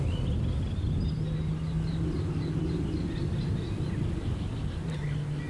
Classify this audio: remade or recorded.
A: recorded